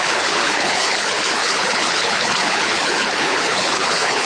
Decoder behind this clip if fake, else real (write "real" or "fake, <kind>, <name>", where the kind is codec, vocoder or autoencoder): fake, codec, HILCodec